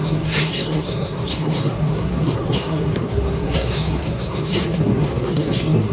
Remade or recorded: remade